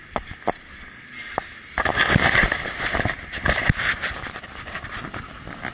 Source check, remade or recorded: recorded